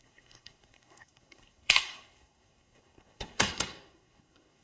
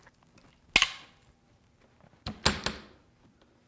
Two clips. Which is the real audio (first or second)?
second